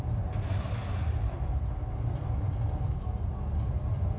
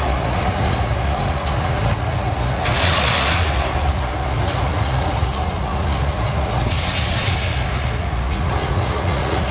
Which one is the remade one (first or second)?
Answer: second